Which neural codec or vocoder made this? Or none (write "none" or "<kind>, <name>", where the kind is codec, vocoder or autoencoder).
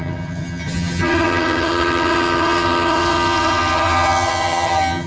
vocoder, HiFi-GAN